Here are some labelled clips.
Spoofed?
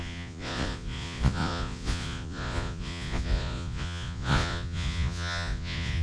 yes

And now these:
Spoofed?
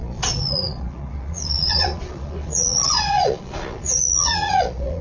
yes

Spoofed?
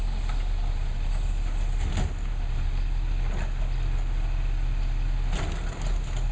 no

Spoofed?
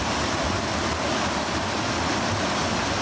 no